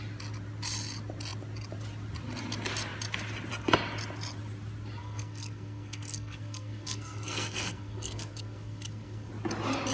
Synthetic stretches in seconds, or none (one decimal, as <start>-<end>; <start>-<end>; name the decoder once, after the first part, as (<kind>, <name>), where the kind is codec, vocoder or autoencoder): 5.0-9.3 (codec, SNAC)